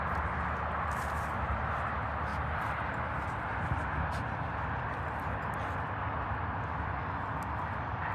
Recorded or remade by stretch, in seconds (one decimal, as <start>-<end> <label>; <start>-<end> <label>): 0.0-8.1 recorded